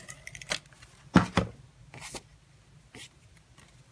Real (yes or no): yes